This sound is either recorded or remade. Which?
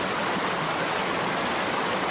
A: recorded